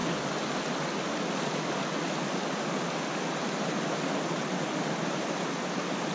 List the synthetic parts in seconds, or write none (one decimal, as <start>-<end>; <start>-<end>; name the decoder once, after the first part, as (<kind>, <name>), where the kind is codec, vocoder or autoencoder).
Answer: none